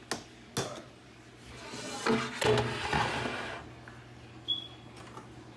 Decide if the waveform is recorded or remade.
recorded